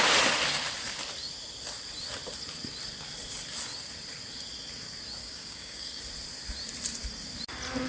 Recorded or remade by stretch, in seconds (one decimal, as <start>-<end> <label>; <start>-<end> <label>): 0.0-5.2 recorded; 5.2-6.0 remade; 6.0-7.9 recorded